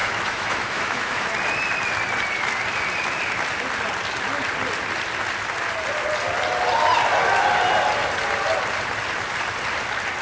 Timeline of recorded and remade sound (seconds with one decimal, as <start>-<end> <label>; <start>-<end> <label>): 0.0-1.3 remade; 1.3-10.2 recorded